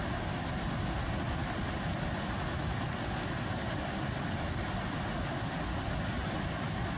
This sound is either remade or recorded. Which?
recorded